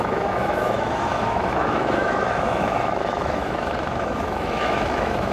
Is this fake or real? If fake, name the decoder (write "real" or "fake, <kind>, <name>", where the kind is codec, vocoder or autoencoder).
fake, autoencoder, DAC-VAE